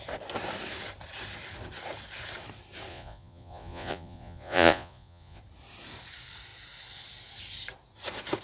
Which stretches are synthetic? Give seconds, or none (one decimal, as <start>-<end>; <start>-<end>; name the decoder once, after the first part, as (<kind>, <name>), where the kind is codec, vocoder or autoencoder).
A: 2.9-5.4 (vocoder, Vocos)